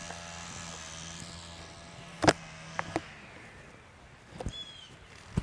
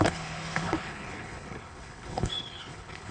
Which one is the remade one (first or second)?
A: second